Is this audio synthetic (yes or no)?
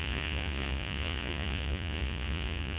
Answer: yes